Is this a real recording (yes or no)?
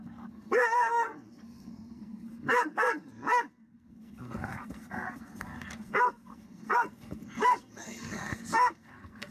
no